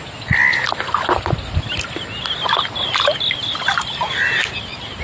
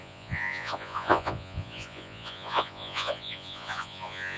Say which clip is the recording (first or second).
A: first